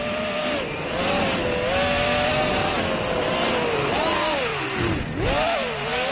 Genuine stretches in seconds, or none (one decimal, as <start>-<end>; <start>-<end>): 0.0-6.1